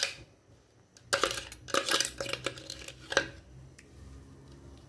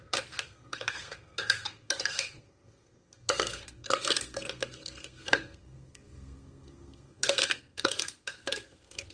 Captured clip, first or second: first